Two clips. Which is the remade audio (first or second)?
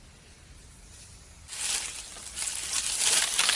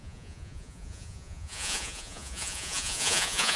second